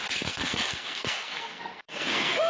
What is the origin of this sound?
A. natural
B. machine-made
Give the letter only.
B